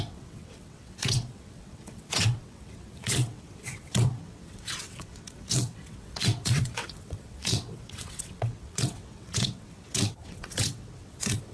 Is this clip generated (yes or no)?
yes